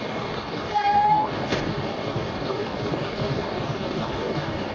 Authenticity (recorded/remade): remade